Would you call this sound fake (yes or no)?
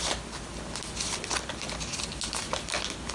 no